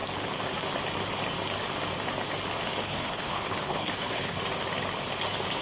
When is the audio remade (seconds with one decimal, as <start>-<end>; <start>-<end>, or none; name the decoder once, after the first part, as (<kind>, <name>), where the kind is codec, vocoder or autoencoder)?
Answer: 2.8-4.4 (codec, HILCodec)